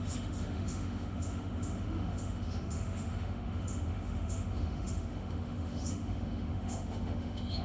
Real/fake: fake